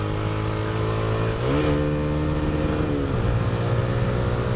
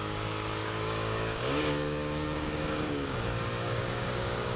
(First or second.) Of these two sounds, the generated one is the second